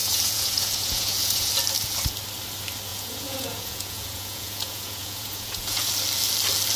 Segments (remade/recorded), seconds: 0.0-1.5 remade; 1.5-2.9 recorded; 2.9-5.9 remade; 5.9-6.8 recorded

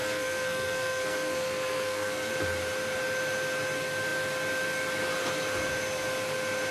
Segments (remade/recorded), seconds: 0.0-2.3 remade; 2.3-6.7 recorded